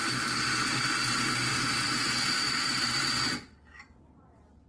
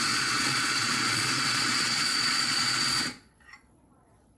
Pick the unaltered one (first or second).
first